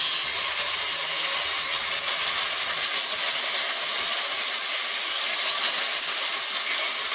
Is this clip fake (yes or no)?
no